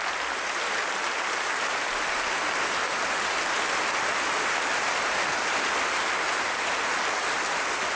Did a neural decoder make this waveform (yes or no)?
no